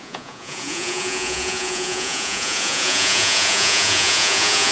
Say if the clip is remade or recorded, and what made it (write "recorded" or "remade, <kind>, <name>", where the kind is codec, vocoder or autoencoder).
remade, vocoder, Vocos